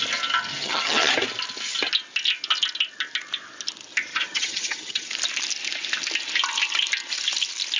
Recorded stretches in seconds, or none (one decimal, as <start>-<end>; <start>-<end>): 0.0-0.5; 1.1-4.1; 5.1-7.8